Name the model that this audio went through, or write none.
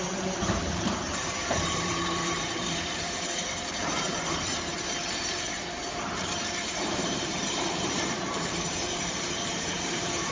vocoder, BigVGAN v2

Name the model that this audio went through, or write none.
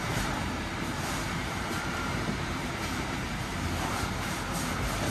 vocoder, BigVGAN v2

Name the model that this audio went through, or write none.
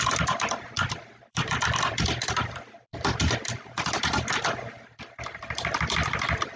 vocoder, BigVGAN v2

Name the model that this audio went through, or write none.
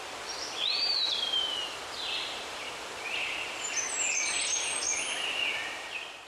vocoder, BigVGAN v2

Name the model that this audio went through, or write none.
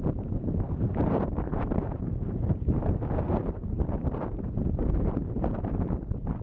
vocoder, BigVGAN v2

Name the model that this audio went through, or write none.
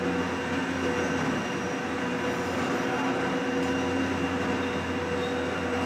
none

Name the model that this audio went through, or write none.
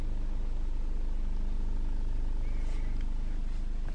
none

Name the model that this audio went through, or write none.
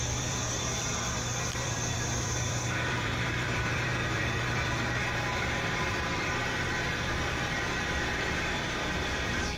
vocoder, BigVGAN v2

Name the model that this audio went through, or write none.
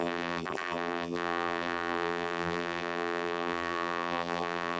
vocoder, BigVGAN v2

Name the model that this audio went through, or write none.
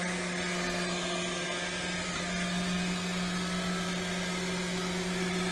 none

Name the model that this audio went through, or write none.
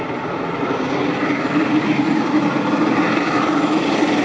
vocoder, BigVGAN v2